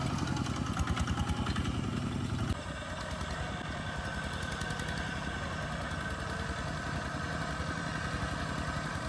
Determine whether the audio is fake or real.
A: real